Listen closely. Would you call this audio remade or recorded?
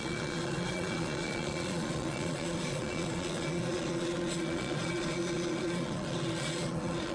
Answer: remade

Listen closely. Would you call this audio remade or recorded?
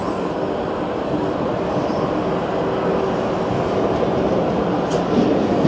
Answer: recorded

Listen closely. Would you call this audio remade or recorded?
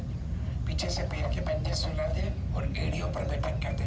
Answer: recorded